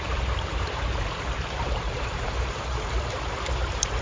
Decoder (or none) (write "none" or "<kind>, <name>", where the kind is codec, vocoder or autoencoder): vocoder, BigVGAN v2